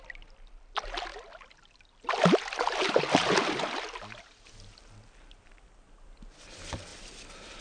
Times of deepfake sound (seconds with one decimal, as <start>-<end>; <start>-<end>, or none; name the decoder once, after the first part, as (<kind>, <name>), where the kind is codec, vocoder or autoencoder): none